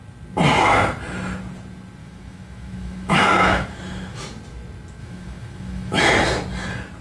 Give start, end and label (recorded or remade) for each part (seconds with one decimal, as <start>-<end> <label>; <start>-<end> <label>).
0.0-2.0 recorded; 2.0-4.2 remade; 4.2-5.0 recorded; 5.0-6.0 remade; 6.0-7.0 recorded